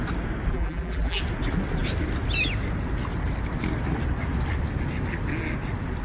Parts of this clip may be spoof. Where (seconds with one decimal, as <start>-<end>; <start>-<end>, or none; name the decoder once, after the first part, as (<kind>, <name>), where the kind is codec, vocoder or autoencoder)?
0.5-1.2 (vocoder, BigVGAN v2)